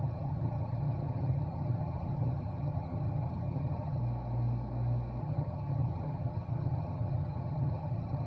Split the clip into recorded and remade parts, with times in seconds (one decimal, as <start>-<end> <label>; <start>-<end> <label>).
0.0-4.0 remade; 4.0-5.2 recorded; 5.2-8.3 remade